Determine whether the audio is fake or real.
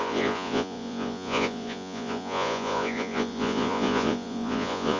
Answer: fake